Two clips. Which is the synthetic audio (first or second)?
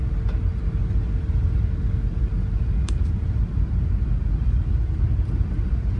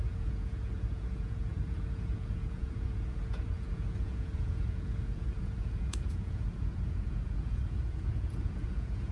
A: second